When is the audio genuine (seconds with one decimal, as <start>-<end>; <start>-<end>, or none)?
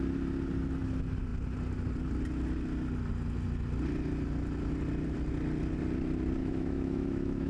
0.0-6.4